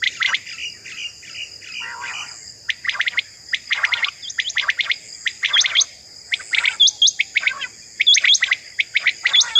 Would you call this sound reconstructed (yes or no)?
no